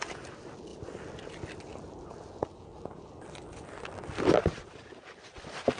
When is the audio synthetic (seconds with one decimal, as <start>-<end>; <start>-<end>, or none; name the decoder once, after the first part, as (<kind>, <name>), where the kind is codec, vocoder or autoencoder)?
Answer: none